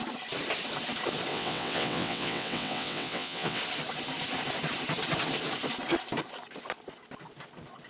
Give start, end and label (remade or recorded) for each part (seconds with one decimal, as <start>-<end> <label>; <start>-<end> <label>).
0.0-1.3 recorded; 1.3-3.6 remade; 3.6-7.9 recorded